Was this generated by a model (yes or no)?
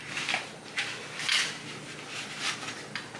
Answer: no